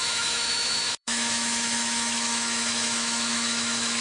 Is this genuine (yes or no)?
no